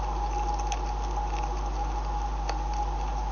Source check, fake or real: real